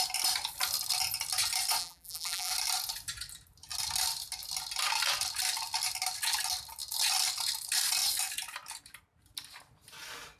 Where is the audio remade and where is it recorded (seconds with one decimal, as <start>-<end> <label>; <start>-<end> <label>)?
0.0-1.8 recorded; 1.8-2.5 remade; 2.5-10.4 recorded